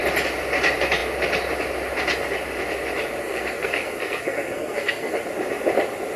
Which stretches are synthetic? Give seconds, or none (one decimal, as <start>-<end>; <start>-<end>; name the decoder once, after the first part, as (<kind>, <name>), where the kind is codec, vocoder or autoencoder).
3.2-5.2 (codec, SNAC)